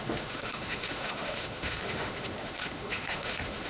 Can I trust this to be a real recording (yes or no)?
no